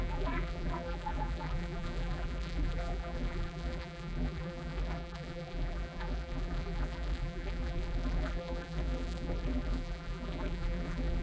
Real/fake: fake